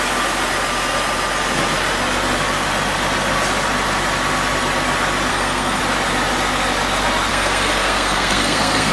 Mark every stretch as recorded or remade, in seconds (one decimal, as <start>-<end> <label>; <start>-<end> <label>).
0.0-5.3 recorded; 5.3-5.8 remade; 5.8-7.3 recorded; 7.3-8.9 remade

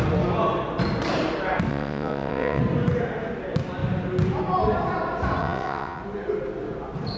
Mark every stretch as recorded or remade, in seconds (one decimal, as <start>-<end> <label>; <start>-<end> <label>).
0.0-1.7 recorded; 1.7-2.6 remade; 2.6-5.4 recorded; 5.4-6.0 remade; 6.0-7.2 recorded

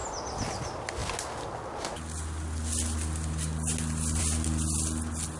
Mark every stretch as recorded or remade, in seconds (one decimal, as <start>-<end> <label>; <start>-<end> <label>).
0.0-5.4 recorded

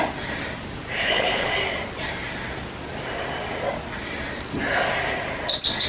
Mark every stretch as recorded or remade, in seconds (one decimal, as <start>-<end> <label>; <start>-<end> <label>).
0.0-1.0 recorded; 1.0-1.5 remade; 1.5-5.9 recorded